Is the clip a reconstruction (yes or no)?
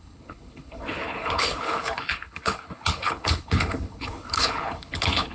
yes